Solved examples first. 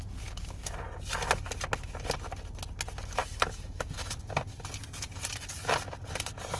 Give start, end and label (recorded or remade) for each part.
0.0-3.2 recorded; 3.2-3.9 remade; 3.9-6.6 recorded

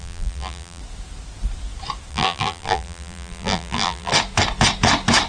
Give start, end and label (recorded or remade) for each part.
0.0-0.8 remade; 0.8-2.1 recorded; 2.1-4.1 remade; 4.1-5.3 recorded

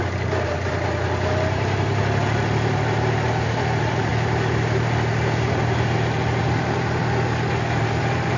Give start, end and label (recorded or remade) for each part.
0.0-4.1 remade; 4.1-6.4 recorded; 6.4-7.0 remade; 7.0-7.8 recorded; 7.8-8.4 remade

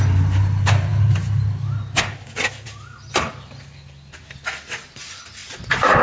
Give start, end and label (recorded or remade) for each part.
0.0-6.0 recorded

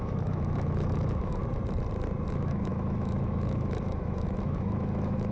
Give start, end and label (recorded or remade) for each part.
0.0-1.4 remade; 1.4-2.3 recorded; 2.3-5.3 remade

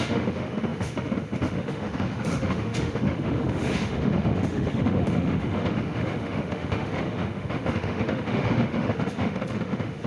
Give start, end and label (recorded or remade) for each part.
0.0-10.1 remade